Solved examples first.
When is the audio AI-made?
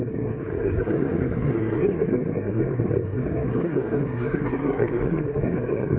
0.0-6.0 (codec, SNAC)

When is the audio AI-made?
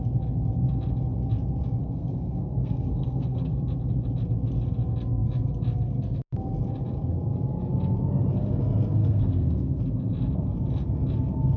1.8-3.5 (codec, SNAC); 9.0-9.8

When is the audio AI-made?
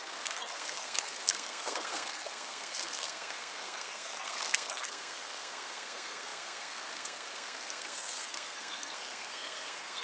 0.0-10.0 (codec, SNAC)